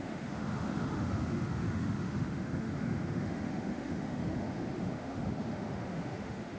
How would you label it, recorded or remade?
remade